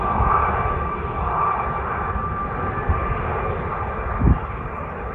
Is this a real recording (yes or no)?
yes